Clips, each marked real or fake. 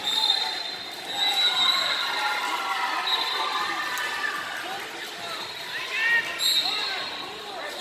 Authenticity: real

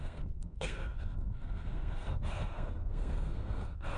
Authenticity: fake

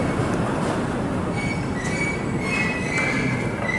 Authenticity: real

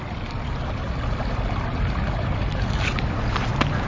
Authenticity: real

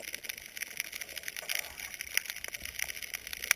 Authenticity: real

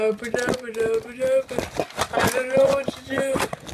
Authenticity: real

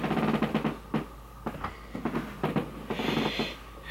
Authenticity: real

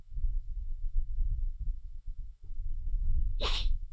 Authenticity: fake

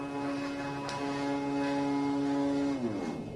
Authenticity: real